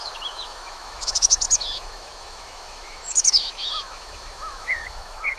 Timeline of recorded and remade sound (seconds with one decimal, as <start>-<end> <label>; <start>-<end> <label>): 0.0-5.4 remade